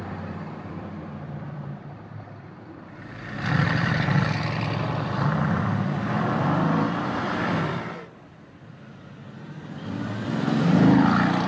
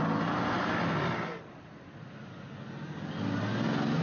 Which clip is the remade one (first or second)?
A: first